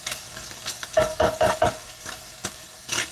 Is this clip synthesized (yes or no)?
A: yes